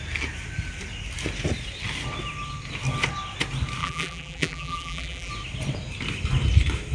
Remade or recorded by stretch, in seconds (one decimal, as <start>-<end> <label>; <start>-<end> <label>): 0.0-3.8 recorded; 3.8-5.3 remade; 5.3-6.9 recorded